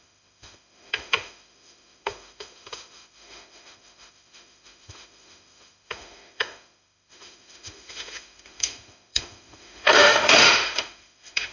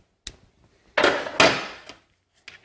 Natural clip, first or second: second